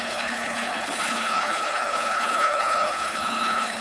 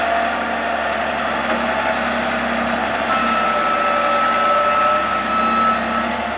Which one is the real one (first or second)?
second